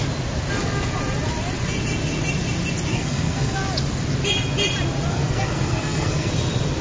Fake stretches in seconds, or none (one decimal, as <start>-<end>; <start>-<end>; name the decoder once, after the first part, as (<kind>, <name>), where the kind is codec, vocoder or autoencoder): 2.9-3.5 (codec, SNAC); 5.1-6.3

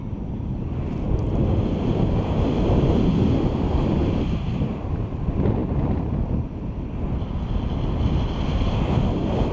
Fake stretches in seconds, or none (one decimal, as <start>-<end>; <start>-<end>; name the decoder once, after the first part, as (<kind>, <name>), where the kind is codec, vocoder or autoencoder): none

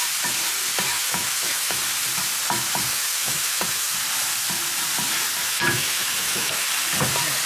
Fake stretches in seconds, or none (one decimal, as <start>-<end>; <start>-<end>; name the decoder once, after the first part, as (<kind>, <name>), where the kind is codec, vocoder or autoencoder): 0.9-1.8 (autoencoder, DAC-VAE); 2.9-3.9; 5.4-6.7

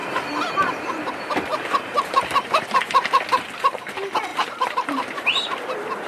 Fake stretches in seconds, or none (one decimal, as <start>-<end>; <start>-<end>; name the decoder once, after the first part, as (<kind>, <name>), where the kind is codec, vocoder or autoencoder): 0.0-1.0 (vocoder, BigVGAN v2); 1.5-3.2; 4.3-5.5

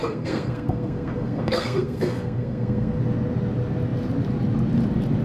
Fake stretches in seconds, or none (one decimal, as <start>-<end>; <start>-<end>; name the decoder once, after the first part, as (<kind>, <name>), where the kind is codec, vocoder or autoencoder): 0.0-3.0 (codec, SNAC)

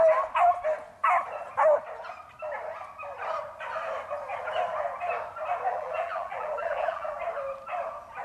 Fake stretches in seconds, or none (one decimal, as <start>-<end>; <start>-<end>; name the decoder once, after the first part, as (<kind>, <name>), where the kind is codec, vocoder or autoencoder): 5.7-7.2 (vocoder, BigVGAN v2)

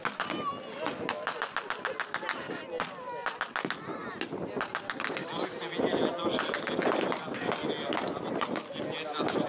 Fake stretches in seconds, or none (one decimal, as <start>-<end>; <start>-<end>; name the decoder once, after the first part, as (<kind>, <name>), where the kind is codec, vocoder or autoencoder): none